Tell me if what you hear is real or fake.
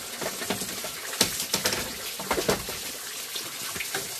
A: real